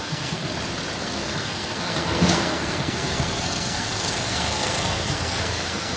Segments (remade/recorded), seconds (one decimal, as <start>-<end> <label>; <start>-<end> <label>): 0.0-0.5 remade; 0.5-1.0 recorded; 1.0-6.0 remade